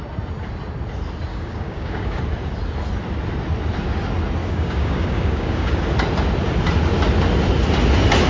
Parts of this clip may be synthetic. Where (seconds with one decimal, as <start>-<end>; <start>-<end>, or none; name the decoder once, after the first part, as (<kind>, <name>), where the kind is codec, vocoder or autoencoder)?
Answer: 1.3-2.2 (codec, DAC); 4.4-5.7